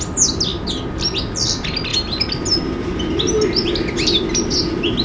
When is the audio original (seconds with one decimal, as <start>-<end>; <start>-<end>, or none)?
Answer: 0.0-5.0

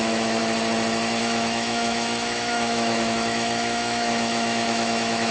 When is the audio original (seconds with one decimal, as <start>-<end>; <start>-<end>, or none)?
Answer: 0.4-1.2

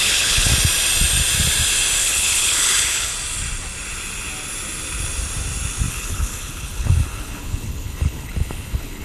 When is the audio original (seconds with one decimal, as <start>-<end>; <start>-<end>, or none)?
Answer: 0.5-2.0; 3.1-5.9

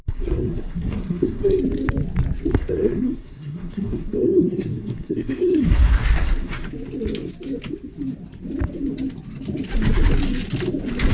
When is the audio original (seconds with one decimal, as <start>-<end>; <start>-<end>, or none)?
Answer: 1.6-2.5; 6.7-11.1

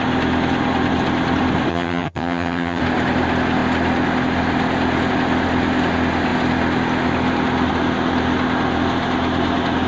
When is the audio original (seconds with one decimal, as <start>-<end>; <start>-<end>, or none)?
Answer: 0.0-1.7; 2.8-9.9

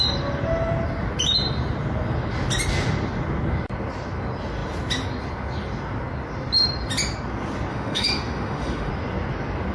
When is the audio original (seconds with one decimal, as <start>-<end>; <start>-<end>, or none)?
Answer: 0.0-7.7; 8.9-9.7

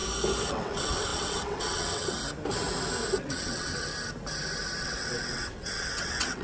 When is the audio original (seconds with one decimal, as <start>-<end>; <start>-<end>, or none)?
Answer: 0.0-0.5; 2.2-3.2; 3.9-4.8